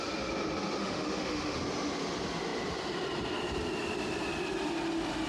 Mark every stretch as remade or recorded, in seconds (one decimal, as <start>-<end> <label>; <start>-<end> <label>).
0.0-0.8 recorded; 0.8-1.6 remade; 1.6-5.3 recorded